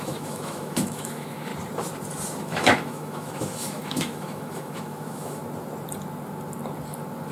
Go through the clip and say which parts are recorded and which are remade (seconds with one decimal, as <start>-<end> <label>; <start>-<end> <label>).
0.0-1.5 remade; 1.5-2.4 recorded; 2.4-5.4 remade; 5.4-7.3 recorded